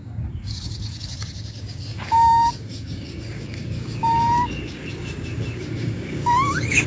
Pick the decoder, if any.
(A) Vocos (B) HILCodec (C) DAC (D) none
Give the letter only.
C